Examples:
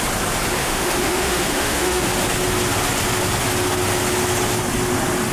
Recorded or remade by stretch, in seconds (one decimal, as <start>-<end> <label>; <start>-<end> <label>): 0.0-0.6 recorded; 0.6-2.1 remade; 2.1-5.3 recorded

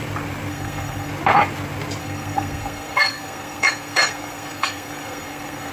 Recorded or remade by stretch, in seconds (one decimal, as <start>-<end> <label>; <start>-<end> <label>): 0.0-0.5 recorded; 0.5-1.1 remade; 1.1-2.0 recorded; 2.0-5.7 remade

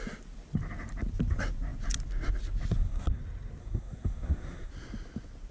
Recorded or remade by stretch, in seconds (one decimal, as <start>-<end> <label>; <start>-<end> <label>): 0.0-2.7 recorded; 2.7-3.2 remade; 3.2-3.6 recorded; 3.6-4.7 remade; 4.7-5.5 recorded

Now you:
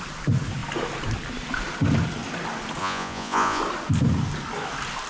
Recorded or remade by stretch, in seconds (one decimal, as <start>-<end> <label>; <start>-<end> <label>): 0.0-2.8 recorded; 2.8-3.6 remade; 3.6-5.1 recorded

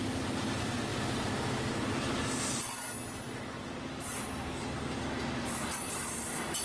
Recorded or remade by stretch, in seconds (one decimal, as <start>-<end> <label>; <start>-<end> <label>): 0.0-6.6 recorded